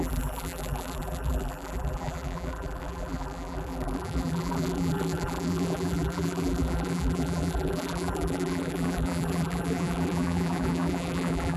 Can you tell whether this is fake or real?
fake